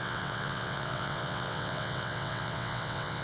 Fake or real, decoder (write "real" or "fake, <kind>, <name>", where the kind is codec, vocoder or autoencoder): fake, vocoder, WaveNeXt